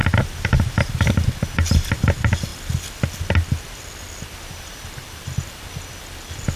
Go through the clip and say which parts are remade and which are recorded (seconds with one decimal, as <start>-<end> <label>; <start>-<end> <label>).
0.0-6.6 recorded